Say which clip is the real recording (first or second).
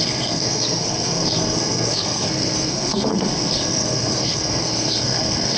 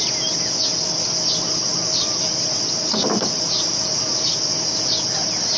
second